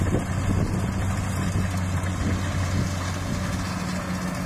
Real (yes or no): yes